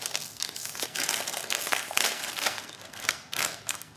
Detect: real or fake fake